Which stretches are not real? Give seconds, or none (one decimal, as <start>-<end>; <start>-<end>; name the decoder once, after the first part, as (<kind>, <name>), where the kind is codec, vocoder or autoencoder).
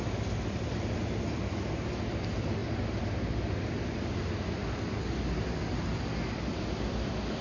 none